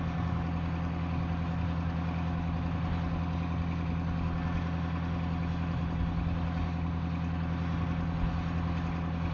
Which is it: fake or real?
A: real